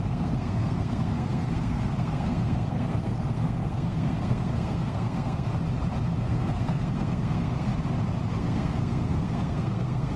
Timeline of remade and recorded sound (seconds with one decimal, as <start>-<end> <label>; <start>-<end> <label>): 0.0-5.5 remade; 5.5-6.2 recorded; 6.2-7.7 remade; 7.7-8.3 recorded; 8.3-10.2 remade